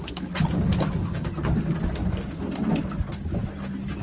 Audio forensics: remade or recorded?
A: recorded